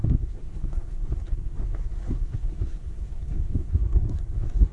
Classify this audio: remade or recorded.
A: remade